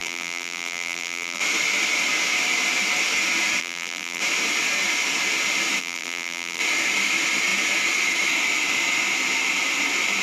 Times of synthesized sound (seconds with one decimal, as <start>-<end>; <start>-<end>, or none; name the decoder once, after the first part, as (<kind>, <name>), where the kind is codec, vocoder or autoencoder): 0.0-1.4 (vocoder, BigVGAN v2); 3.6-4.2; 5.8-6.6